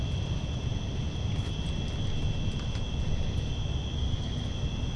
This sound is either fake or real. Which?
real